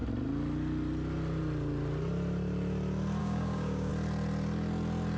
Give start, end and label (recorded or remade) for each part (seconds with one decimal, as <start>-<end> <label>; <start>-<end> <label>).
0.0-3.2 recorded; 3.2-3.9 remade; 3.9-5.2 recorded

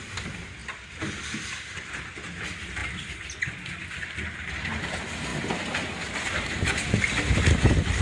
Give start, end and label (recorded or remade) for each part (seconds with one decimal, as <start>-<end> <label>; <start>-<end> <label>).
0.0-0.6 remade; 0.6-1.2 recorded; 1.2-5.3 remade; 5.3-7.6 recorded; 7.6-8.0 remade

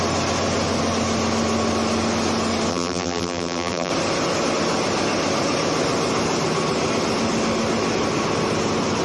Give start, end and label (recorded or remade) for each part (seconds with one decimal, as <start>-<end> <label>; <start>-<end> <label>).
0.0-2.7 recorded; 2.7-3.9 remade; 3.9-9.0 recorded

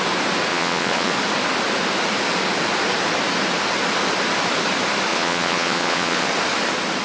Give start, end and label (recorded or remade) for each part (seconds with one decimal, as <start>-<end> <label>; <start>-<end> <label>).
0.0-0.5 recorded; 0.5-1.1 remade; 1.1-5.1 recorded; 5.1-6.3 remade; 6.3-7.0 recorded

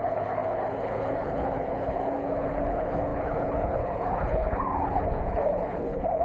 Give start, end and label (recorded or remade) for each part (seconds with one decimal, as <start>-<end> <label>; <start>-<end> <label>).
0.0-6.2 remade

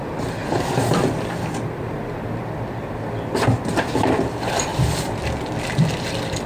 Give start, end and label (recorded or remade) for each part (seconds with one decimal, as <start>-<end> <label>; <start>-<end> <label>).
0.0-4.7 remade; 4.7-6.1 recorded; 6.1-6.5 remade